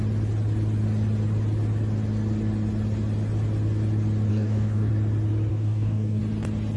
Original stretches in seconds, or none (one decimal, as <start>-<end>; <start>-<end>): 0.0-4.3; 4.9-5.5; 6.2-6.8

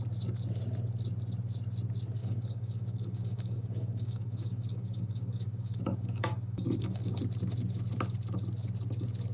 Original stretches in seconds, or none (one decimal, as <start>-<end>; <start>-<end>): 0.0-2.2; 7.2-9.3

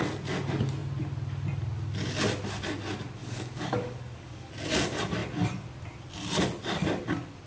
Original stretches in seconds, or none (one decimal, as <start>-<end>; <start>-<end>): 0.0-3.2; 4.5-7.5